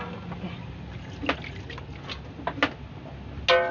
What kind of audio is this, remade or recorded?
recorded